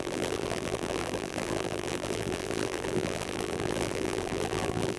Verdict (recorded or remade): remade